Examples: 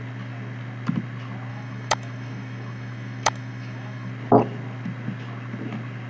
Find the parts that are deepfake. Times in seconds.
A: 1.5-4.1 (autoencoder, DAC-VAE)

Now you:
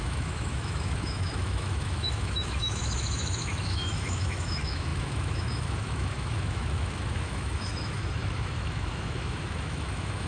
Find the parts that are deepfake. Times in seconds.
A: 0.0-10.3 (autoencoder, DAC-VAE)

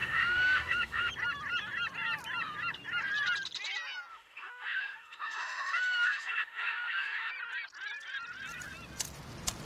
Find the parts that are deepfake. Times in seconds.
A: 0.0-1.1 (autoencoder, DAC-VAE); 4.1-7.3